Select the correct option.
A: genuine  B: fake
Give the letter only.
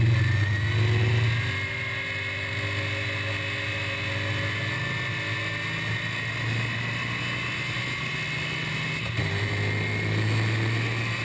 A